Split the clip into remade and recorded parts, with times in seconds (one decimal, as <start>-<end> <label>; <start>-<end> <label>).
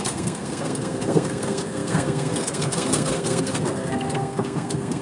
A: 0.0-5.0 remade